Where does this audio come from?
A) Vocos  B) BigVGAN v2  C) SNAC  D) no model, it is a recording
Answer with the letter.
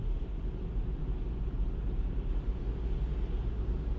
D